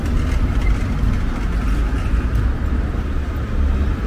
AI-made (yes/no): no